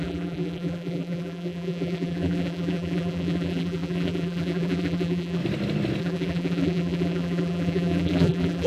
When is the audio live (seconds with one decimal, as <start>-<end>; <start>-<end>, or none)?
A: 5.4-6.0